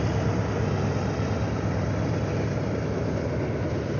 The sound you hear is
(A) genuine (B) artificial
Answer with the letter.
A